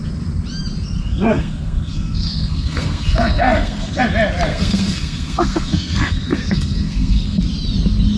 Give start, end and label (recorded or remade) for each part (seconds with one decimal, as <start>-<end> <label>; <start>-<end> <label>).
0.0-1.0 recorded; 1.0-4.0 remade; 4.0-4.5 recorded; 4.5-7.4 remade; 7.4-8.2 recorded